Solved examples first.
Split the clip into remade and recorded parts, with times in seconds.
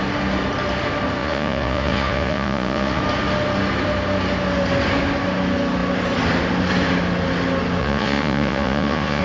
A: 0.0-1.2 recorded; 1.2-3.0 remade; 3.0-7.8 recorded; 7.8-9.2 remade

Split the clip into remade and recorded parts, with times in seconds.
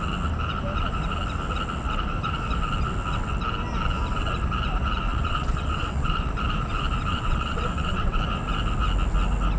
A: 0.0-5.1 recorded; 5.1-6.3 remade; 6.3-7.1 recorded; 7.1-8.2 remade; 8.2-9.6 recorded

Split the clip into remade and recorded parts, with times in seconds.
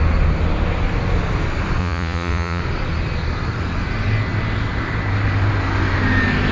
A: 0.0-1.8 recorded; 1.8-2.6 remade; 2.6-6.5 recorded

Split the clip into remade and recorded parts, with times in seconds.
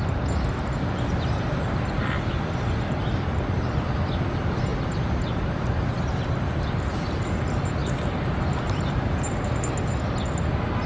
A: 0.0-4.7 recorded; 4.7-5.9 remade; 5.9-7.8 recorded; 7.8-9.7 remade; 9.7-10.9 recorded